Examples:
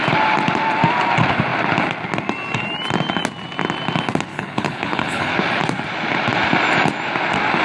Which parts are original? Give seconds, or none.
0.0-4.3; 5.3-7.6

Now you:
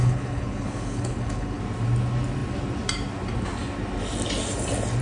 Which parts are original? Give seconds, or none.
1.6-5.0